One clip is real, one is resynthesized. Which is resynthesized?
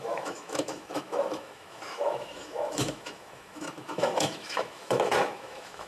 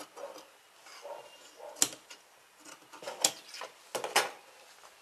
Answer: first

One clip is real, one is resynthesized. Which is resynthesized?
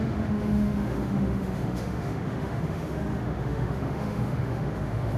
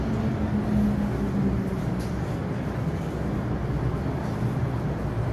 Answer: first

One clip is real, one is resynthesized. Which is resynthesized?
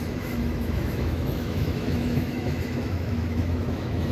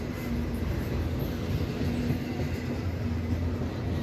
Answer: first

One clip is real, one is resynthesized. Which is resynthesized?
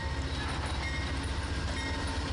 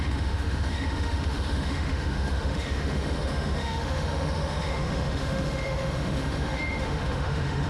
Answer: second